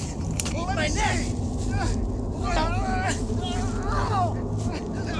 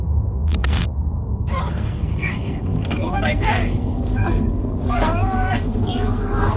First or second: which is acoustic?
first